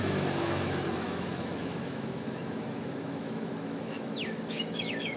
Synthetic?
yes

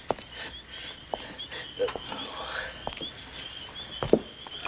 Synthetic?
no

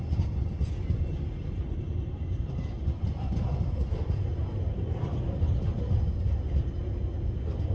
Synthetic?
no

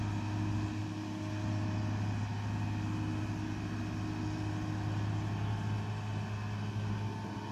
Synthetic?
no